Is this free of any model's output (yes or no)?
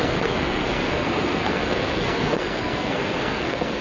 no